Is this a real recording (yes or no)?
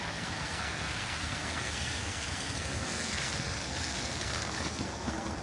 no